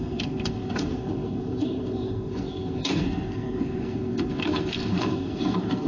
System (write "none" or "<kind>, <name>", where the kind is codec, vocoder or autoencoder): codec, SNAC